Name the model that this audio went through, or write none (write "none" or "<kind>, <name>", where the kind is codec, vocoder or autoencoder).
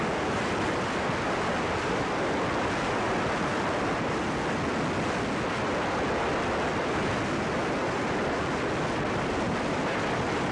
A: none